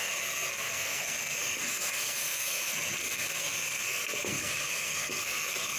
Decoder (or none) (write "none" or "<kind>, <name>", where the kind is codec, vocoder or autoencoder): codec, SNAC